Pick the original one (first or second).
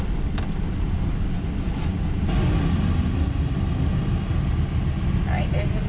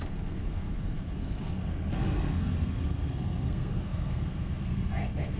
first